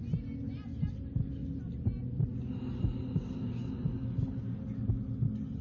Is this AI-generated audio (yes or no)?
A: no